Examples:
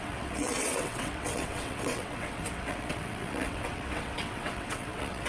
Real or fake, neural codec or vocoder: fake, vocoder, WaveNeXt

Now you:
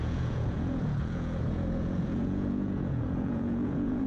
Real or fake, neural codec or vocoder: fake, vocoder, Vocos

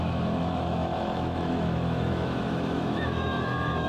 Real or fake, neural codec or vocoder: fake, autoencoder, DAC-VAE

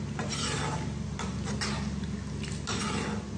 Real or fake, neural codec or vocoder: real